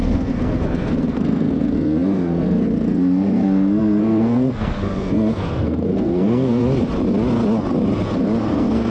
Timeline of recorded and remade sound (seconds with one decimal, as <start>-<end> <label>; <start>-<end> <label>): 0.0-6.6 remade; 6.6-8.5 recorded; 8.5-8.9 remade